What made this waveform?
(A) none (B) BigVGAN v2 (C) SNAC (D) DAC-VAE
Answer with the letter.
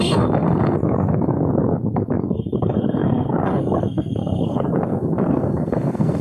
C